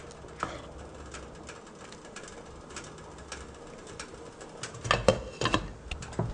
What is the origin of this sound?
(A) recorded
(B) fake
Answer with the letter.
A